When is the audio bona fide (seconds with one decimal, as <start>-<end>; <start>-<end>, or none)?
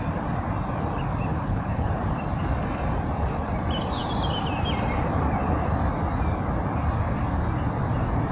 0.0-1.3; 1.9-8.3